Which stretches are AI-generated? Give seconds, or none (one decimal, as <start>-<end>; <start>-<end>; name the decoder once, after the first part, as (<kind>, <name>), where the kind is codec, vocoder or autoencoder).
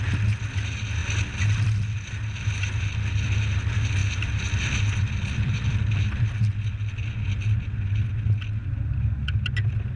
4.0-6.0 (vocoder, BigVGAN v2); 8.6-9.1